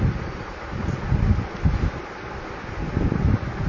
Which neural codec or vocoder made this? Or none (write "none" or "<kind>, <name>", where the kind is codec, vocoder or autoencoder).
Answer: none